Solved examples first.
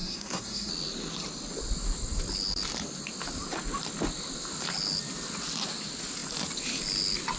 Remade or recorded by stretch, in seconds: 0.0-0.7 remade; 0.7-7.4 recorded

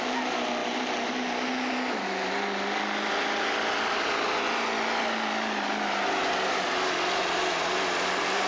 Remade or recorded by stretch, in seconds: 0.0-8.5 recorded

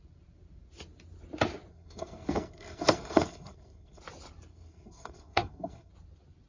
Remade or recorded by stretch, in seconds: 0.0-1.7 recorded; 1.7-4.0 remade; 4.0-4.5 recorded; 4.5-5.9 remade; 5.9-6.5 recorded

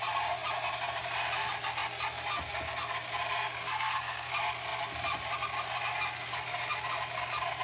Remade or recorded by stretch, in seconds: 0.0-3.6 recorded; 3.6-4.3 remade; 4.3-7.6 recorded

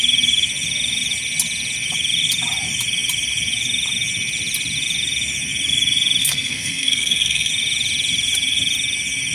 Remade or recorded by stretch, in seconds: 0.0-6.2 recorded; 6.2-7.5 remade; 7.5-9.3 recorded

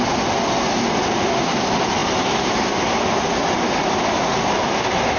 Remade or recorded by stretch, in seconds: 0.0-5.2 recorded